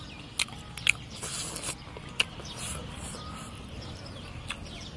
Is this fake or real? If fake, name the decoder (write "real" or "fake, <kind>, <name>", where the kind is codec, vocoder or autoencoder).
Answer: real